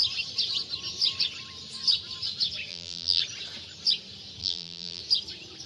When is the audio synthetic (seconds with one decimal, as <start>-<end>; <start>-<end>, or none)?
2.7-3.2; 4.4-5.0